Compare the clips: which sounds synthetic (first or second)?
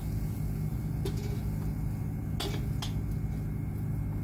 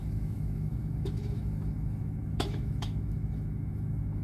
second